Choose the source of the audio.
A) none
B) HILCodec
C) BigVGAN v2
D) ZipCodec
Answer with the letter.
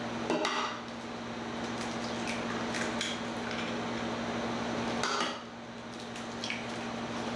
A